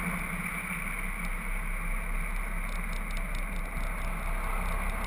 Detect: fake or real real